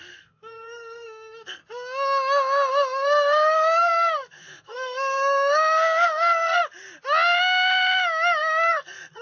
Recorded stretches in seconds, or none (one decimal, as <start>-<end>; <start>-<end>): 1.6-2.7; 6.6-8.4